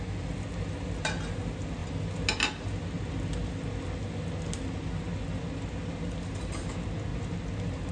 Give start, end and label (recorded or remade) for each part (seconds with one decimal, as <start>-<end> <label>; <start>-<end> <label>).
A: 0.0-7.9 recorded